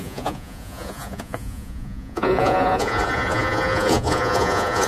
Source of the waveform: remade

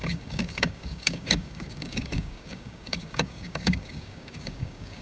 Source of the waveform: remade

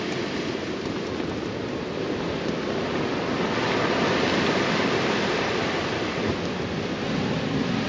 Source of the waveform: recorded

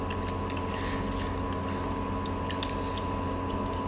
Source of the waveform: recorded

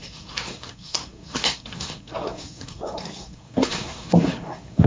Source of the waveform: remade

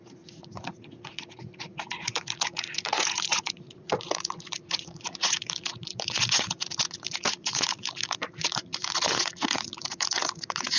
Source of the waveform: remade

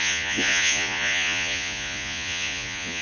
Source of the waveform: remade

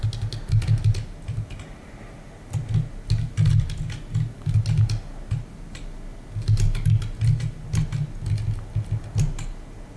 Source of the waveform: recorded